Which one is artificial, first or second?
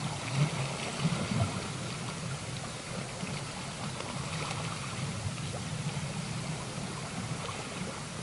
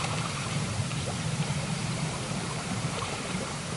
second